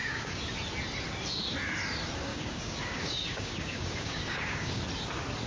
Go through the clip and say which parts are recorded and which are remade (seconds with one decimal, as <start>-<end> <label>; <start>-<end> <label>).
0.0-0.5 remade; 0.5-2.3 recorded; 2.3-4.8 remade; 4.8-5.5 recorded